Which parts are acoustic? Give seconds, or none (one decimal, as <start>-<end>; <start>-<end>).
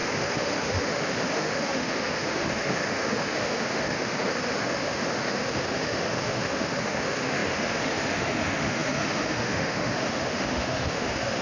none